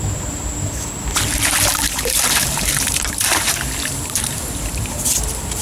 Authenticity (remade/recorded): remade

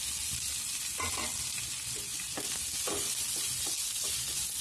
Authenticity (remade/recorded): recorded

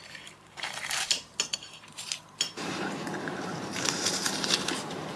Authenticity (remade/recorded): remade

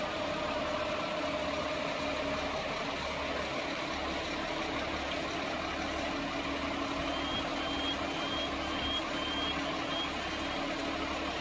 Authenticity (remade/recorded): recorded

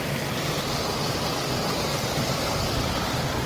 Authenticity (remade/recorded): recorded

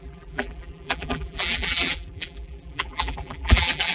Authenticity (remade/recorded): remade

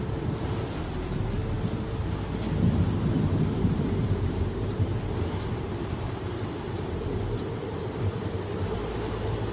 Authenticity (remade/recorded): remade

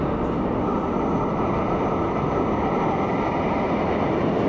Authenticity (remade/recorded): recorded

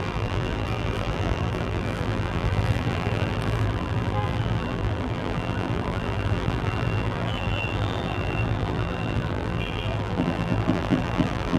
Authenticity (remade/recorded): remade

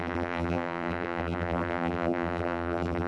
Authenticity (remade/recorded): remade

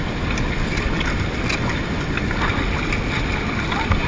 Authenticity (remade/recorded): recorded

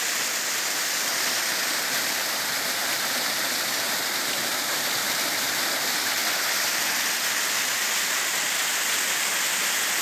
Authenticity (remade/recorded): recorded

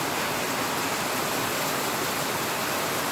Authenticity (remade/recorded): recorded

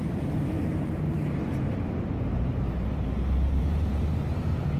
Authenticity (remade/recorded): remade